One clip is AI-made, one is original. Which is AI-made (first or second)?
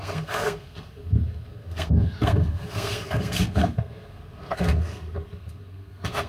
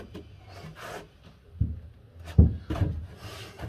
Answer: first